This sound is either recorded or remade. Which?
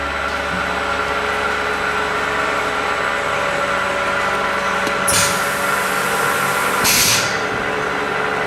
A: recorded